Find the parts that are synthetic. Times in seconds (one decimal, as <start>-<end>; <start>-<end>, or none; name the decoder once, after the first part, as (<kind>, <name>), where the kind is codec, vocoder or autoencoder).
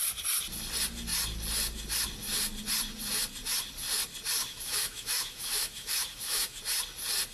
4.4-6.6 (autoencoder, DAC-VAE)